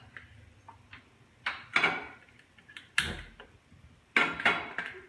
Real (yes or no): yes